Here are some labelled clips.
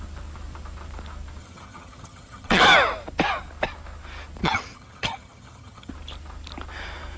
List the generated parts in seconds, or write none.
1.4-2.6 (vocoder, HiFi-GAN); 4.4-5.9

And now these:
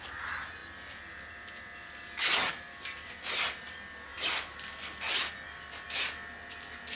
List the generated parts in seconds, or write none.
none

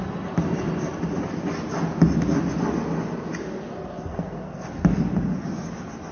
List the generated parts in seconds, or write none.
4.1-4.8 (codec, SNAC)

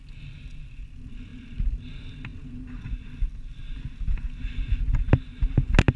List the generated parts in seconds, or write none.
none

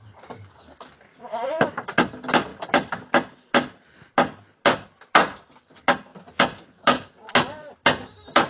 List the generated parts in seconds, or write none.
2.5-3.1 (vocoder, BigVGAN v2)

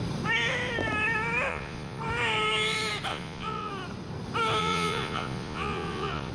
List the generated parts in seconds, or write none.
1.5-2.0 (vocoder, Vocos); 3.1-3.7; 4.6-6.3

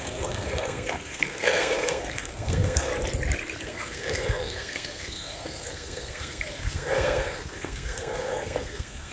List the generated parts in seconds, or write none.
0.0-2.9 (codec, SNAC); 3.6-9.1